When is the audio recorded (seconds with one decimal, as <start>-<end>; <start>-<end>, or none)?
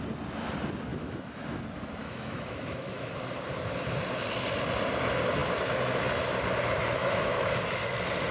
0.0-0.9; 1.6-2.0; 3.1-7.0; 7.8-8.3